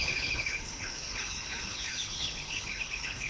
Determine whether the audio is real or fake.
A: fake